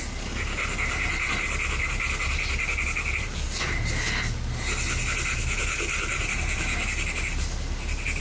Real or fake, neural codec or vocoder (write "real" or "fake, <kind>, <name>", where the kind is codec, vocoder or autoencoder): real